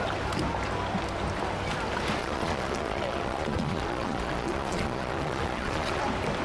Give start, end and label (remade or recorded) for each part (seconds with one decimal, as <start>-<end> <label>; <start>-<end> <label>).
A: 0.0-2.2 recorded; 2.2-6.0 remade; 6.0-6.4 recorded